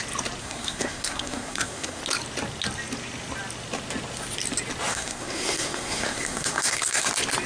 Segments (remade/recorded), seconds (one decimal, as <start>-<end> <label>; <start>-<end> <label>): 0.0-0.4 recorded; 0.4-2.0 remade; 2.0-4.9 recorded; 4.9-7.1 remade; 7.1-7.5 recorded